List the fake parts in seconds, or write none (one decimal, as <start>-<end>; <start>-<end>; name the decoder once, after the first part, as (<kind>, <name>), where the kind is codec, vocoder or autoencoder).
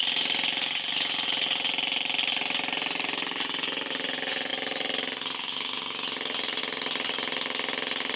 none